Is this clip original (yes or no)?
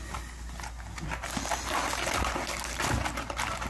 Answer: yes